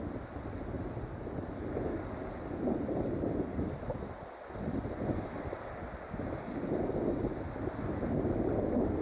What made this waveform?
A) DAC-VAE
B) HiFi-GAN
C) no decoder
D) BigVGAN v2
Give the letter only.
C